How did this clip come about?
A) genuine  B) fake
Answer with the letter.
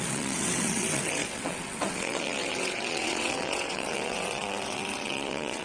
B